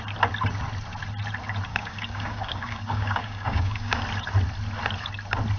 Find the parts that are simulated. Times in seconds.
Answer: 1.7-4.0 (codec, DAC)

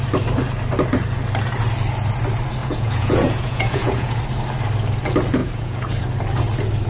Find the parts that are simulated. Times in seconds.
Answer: 2.6-4.2 (vocoder, Vocos); 5.4-5.9